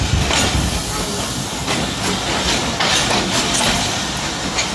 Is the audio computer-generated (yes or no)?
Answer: no